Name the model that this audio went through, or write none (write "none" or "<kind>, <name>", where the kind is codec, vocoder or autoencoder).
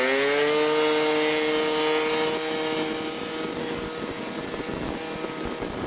none